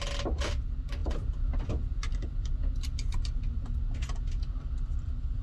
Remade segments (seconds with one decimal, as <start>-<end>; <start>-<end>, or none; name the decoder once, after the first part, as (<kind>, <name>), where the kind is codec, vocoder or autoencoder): none